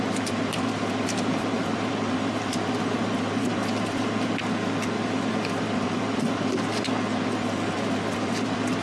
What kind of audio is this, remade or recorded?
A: recorded